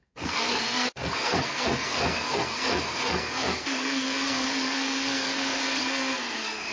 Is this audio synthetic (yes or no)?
yes